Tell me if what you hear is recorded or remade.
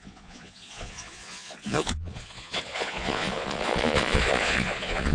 remade